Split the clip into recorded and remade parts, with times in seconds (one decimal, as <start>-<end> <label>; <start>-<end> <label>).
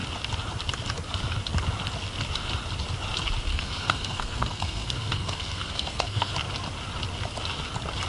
0.0-3.5 recorded; 3.5-6.3 remade; 6.3-8.1 recorded